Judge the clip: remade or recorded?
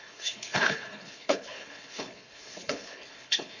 remade